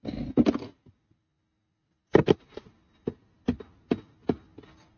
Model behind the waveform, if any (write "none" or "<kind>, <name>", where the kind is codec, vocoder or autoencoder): none